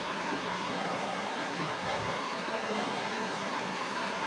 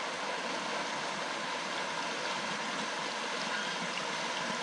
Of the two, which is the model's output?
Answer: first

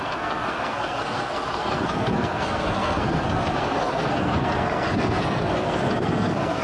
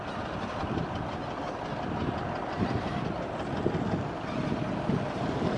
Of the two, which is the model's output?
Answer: first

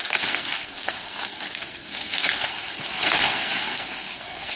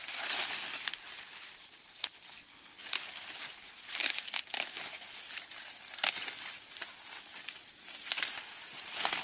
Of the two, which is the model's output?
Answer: first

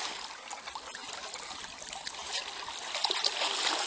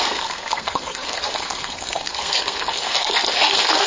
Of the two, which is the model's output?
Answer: second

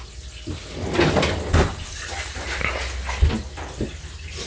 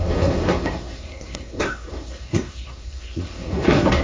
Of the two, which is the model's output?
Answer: second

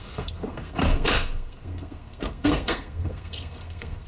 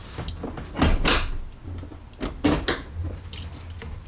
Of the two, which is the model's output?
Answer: first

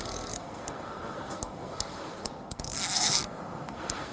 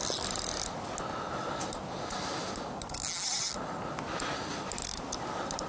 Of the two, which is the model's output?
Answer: first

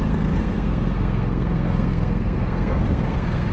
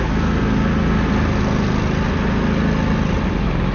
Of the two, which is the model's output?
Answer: first